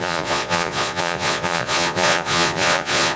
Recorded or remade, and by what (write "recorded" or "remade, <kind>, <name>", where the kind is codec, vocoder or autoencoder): remade, vocoder, Vocos